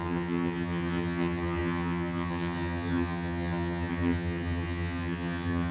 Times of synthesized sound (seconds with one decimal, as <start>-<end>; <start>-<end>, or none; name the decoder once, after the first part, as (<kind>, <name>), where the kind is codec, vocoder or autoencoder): 0.0-5.7 (vocoder, HiFi-GAN)